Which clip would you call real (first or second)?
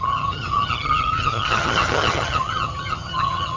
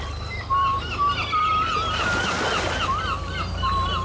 second